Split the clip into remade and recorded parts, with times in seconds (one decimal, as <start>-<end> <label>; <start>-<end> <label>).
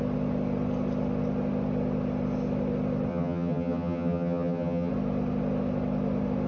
0.0-3.1 recorded; 3.1-4.9 remade; 4.9-6.5 recorded